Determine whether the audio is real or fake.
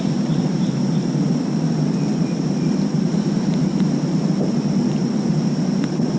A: fake